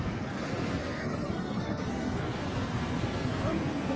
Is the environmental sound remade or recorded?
remade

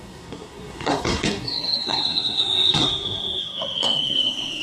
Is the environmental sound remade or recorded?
remade